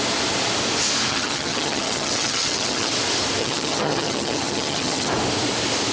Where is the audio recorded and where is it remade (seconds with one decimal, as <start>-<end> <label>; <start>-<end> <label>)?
0.0-1.1 recorded; 1.1-2.9 remade; 2.9-3.4 recorded; 3.4-5.1 remade; 5.1-5.9 recorded